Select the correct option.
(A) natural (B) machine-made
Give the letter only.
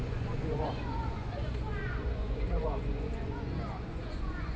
B